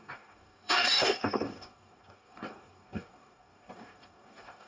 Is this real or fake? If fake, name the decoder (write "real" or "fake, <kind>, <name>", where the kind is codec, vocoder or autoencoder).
fake, codec, DAC